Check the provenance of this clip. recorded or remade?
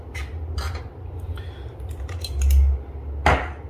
recorded